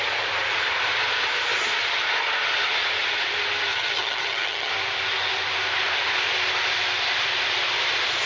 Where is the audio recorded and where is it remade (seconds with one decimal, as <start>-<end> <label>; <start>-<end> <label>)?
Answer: 0.0-3.7 recorded; 3.7-4.7 remade; 4.7-8.3 recorded